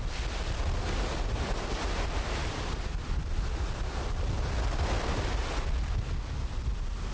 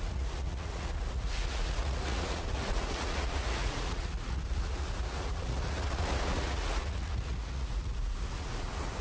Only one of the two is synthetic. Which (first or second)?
second